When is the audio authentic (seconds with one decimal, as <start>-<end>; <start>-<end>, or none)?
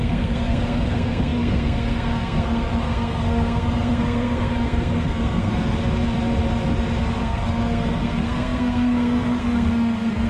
5.5-7.2